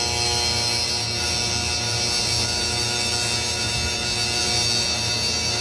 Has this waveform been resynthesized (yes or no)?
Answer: yes